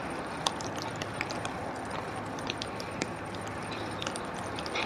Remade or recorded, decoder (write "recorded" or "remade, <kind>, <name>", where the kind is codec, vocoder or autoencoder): recorded